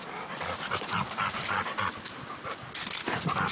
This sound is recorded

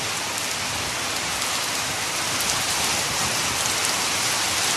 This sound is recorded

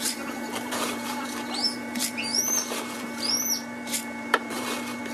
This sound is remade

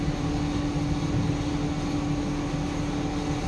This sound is recorded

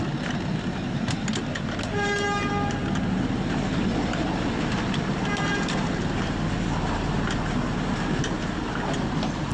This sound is recorded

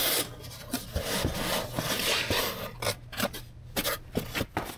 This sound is recorded